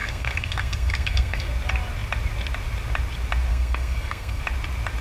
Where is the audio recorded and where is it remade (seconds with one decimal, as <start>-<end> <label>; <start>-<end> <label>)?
0.0-1.5 remade; 1.5-3.5 recorded; 3.5-4.4 remade; 4.4-5.0 recorded

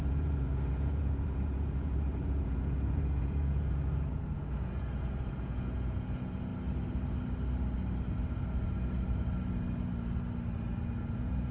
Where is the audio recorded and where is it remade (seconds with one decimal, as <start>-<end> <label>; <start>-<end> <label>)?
0.0-6.5 remade; 6.5-11.0 recorded; 11.0-11.5 remade

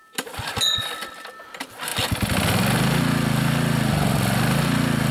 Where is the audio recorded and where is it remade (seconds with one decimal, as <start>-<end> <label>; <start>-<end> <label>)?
0.0-5.1 recorded

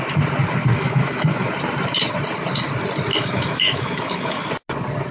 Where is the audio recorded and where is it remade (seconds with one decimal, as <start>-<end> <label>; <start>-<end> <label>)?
0.0-0.7 recorded; 0.7-1.5 remade; 1.5-3.1 recorded; 3.1-4.4 remade; 4.4-5.1 recorded

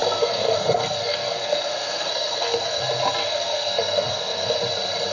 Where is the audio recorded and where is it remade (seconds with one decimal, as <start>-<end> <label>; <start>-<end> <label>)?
0.0-2.8 remade; 2.8-3.2 recorded; 3.2-4.6 remade; 4.6-5.1 recorded

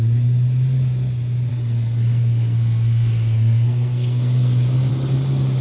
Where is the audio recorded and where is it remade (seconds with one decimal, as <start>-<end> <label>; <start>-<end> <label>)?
0.0-1.5 recorded; 1.5-4.9 remade; 4.9-5.6 recorded